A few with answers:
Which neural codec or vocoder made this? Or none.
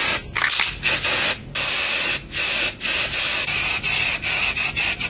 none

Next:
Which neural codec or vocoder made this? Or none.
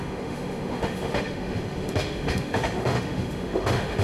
autoencoder, DAC-VAE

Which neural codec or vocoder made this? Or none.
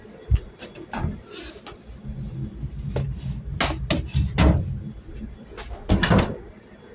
none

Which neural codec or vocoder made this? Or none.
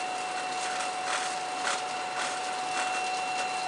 none